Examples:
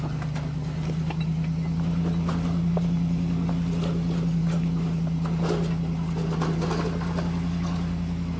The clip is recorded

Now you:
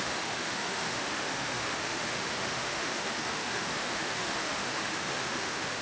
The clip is remade